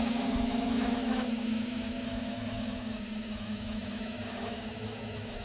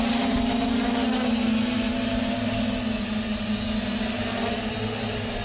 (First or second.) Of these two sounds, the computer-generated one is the first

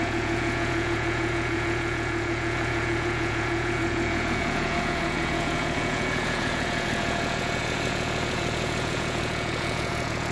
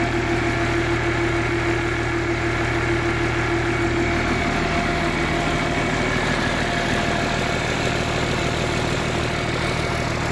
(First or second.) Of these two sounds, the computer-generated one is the first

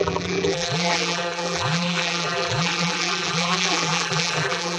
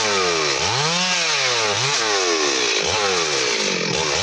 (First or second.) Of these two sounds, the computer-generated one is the first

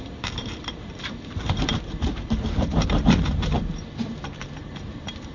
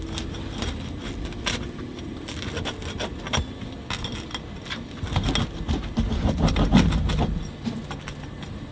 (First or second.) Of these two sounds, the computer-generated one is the first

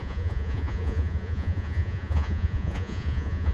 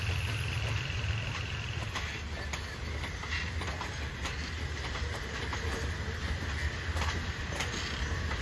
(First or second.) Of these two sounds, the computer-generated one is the first